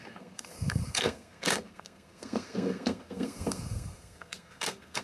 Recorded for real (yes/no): no